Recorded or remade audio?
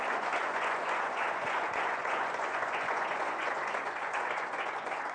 remade